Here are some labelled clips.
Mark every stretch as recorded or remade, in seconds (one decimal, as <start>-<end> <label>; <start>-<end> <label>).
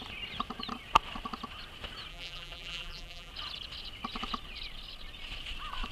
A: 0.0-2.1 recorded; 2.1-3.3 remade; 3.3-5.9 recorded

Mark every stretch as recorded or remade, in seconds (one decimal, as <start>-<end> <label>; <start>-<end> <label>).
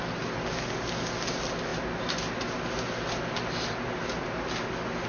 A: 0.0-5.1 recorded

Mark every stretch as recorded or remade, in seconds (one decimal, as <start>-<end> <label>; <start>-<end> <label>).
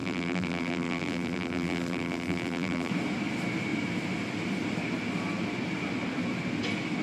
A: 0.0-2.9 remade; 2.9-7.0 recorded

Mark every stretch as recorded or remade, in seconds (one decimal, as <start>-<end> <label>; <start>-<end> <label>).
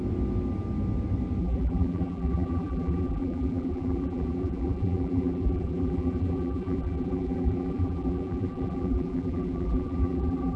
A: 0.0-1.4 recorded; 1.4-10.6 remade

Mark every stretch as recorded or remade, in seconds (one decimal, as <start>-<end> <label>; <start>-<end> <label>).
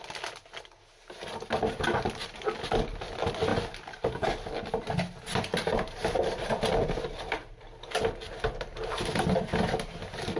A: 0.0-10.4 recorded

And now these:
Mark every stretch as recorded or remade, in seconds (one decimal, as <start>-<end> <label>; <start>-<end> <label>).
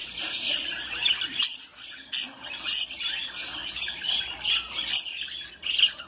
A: 0.0-1.1 remade; 1.1-3.6 recorded; 3.6-4.9 remade; 4.9-6.1 recorded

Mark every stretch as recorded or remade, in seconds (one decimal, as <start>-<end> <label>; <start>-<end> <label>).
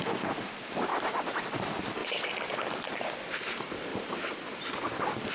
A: 0.0-0.9 recorded; 0.9-1.4 remade; 1.4-3.9 recorded; 3.9-4.7 remade; 4.7-5.3 recorded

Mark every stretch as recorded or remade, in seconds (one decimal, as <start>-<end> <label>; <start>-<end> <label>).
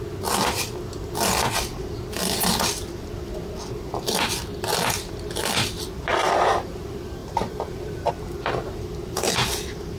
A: 0.0-6.1 recorded; 6.1-6.8 remade; 6.8-7.2 recorded; 7.2-8.1 remade; 8.1-10.0 recorded